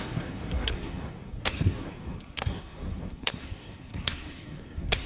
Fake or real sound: fake